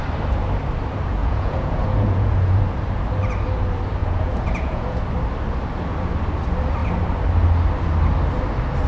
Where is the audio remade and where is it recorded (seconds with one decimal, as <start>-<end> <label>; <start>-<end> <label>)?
0.0-1.2 recorded; 1.2-2.6 remade; 2.6-4.0 recorded; 4.0-5.0 remade; 5.0-8.9 recorded